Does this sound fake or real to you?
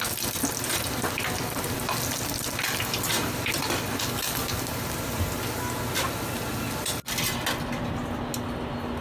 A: real